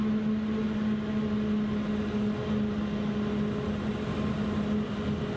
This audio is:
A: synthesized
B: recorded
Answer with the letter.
B